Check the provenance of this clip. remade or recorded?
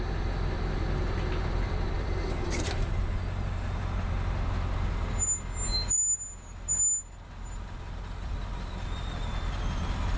recorded